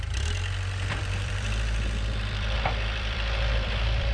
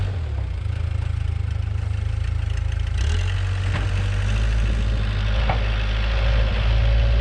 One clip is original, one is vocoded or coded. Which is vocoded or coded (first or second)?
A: first